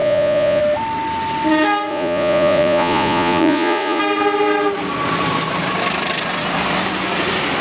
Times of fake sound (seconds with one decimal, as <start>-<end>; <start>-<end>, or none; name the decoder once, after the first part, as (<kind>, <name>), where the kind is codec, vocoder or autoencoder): 0.0-0.6 (vocoder, Vocos); 1.9-4.0